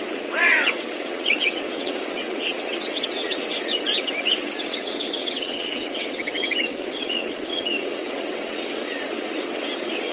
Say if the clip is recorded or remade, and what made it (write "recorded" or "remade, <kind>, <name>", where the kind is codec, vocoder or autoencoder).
remade, vocoder, WaveNeXt